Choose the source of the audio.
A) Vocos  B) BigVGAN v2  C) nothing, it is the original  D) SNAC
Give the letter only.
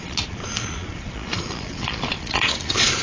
A